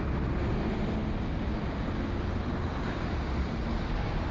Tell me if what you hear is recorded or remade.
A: recorded